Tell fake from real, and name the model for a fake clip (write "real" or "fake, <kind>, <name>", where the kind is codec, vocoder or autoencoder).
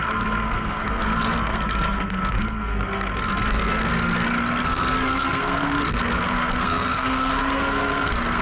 fake, codec, SNAC